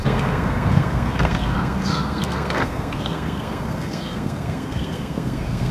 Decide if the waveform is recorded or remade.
remade